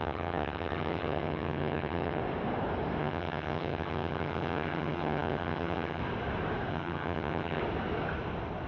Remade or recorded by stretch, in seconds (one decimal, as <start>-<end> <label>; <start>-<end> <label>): 0.0-2.2 remade; 2.2-3.0 recorded; 3.0-6.0 remade; 6.0-6.7 recorded; 6.7-7.6 remade; 7.6-8.7 recorded